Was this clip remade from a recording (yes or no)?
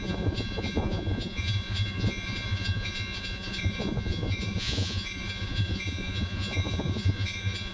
yes